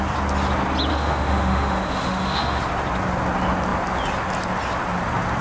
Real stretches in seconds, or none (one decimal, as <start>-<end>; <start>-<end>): 0.0-0.9; 2.6-5.4